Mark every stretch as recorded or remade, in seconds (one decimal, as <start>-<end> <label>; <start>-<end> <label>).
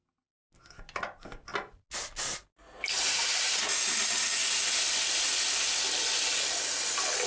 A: 0.0-7.3 recorded